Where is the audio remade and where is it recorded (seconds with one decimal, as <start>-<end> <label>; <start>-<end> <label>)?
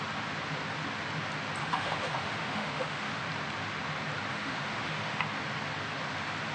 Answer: 0.0-1.6 recorded; 1.6-3.2 remade; 3.2-4.3 recorded; 4.3-5.2 remade; 5.2-6.5 recorded